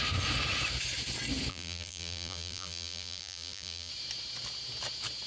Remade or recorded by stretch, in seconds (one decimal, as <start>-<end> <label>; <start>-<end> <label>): 0.0-1.5 recorded; 1.5-3.9 remade; 3.9-5.3 recorded